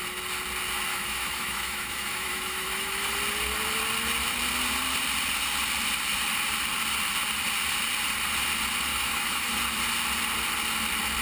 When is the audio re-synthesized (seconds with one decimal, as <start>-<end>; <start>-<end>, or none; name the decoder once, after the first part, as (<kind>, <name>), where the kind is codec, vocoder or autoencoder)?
0.9-3.1 (autoencoder, DAC-VAE); 8.9-9.5